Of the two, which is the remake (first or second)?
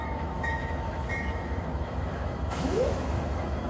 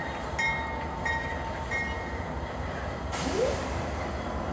first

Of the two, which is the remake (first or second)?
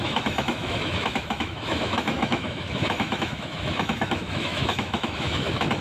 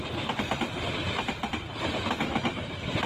first